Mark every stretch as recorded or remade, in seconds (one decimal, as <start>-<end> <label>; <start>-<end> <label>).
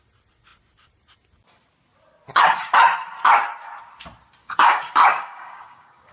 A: 0.0-4.4 recorded; 4.4-6.1 remade